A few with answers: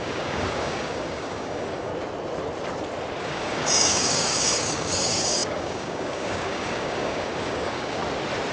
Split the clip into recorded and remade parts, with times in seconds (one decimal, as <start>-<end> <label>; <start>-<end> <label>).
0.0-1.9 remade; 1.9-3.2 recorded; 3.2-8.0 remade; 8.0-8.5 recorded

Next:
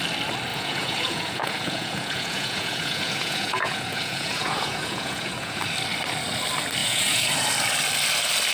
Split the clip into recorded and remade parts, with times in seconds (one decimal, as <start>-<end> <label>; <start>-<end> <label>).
0.0-0.5 recorded; 0.5-5.6 remade; 5.6-6.8 recorded; 6.8-7.3 remade; 7.3-8.5 recorded

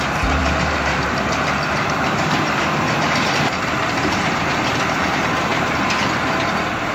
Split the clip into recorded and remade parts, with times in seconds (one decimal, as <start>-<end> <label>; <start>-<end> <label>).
0.0-0.4 recorded; 0.4-4.5 remade; 4.5-6.9 recorded

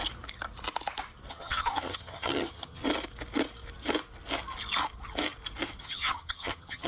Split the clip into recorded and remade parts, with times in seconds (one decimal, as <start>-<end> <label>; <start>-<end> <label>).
0.0-1.3 recorded; 1.3-2.8 remade; 2.8-5.8 recorded; 5.8-6.9 remade

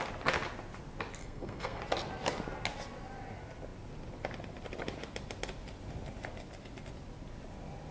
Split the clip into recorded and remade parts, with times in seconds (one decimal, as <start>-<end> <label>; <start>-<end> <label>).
0.0-1.2 recorded; 1.2-1.8 remade; 1.8-7.9 recorded